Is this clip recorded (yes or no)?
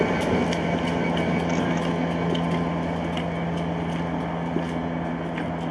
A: yes